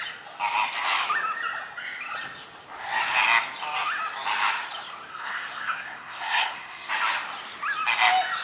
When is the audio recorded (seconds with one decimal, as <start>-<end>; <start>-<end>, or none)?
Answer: 0.0-5.1; 6.9-8.4